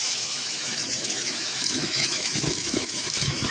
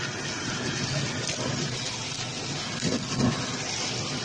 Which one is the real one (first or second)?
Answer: second